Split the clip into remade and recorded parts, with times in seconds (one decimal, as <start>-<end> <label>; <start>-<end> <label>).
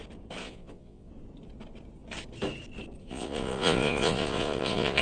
0.0-0.4 recorded; 0.4-1.1 remade; 1.1-3.0 recorded; 3.0-5.0 remade